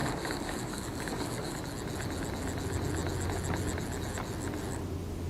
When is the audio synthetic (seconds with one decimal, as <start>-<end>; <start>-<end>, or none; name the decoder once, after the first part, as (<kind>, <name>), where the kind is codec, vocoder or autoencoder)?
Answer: 0.0-1.6 (codec, DAC)